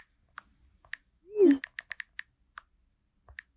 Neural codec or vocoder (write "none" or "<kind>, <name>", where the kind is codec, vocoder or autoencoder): none